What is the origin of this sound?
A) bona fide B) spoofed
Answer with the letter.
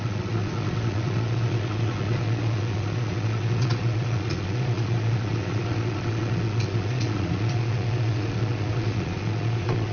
B